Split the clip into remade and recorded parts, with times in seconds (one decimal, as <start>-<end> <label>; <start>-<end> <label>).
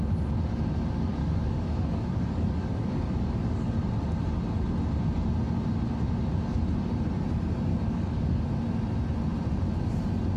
0.0-1.2 recorded; 1.2-3.7 remade; 3.7-7.7 recorded; 7.7-8.5 remade; 8.5-10.4 recorded